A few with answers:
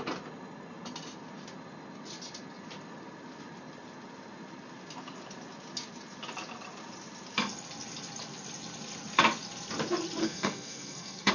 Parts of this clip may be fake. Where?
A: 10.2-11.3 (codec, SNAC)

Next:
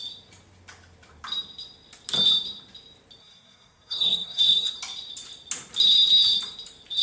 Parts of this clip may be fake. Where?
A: 3.2-4.7 (codec, SNAC)

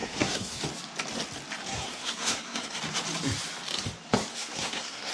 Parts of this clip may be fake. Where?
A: 0.0-0.6 (codec, SNAC); 1.7-2.8; 4.3-5.1

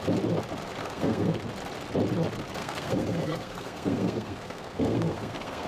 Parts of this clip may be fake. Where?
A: 0.8-1.4 (codec, SNAC); 2.6-5.7

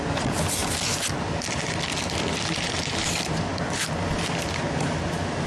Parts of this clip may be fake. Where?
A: none

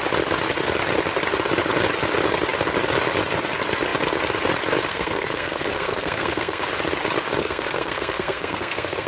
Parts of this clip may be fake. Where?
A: 4.9-6.6 (codec, SNAC); 7.4-9.1

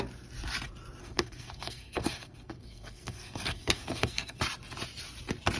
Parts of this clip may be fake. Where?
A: 1.0-4.4 (codec, SNAC)